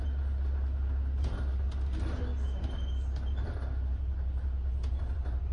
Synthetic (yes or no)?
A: no